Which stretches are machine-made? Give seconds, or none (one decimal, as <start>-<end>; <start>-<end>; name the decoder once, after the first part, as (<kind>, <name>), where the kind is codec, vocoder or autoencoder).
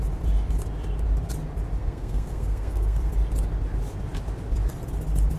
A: 1.8-3.1 (codec, SNAC)